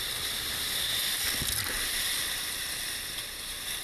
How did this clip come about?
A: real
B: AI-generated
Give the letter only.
A